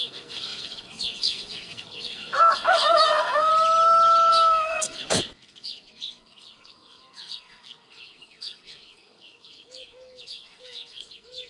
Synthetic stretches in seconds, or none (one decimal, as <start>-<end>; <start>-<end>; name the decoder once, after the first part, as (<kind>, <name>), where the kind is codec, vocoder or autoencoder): 0.0-3.5 (codec, SNAC); 4.3-11.5